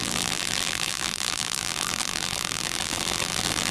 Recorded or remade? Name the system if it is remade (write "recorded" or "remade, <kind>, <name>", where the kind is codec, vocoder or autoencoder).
remade, vocoder, BigVGAN v2